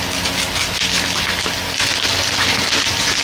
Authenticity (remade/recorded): recorded